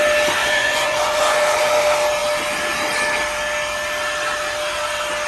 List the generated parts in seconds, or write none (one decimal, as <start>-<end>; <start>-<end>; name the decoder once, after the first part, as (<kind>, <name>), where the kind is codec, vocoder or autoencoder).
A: 0.4-1.8 (vocoder, Vocos)